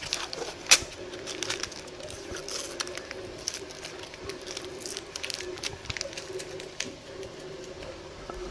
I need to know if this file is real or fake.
real